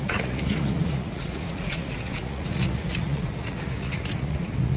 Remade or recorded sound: remade